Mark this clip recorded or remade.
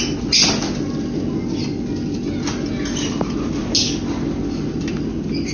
recorded